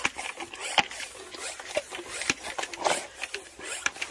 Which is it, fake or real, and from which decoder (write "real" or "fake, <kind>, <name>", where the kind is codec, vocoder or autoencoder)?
real